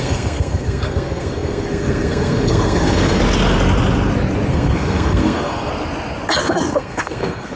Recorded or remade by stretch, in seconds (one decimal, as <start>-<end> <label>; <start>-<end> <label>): 0.0-3.2 remade; 3.2-4.5 recorded; 4.5-5.7 remade; 5.7-6.4 recorded; 6.4-7.6 remade